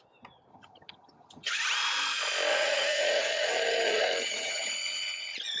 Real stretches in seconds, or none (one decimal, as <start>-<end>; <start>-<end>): 0.0-0.5; 1.5-2.5; 4.7-5.6